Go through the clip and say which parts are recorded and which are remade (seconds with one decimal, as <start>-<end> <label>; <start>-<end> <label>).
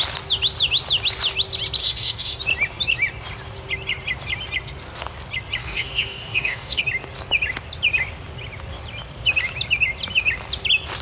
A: 0.0-1.8 recorded; 1.8-2.4 remade; 2.4-5.6 recorded; 5.6-6.8 remade; 6.8-11.0 recorded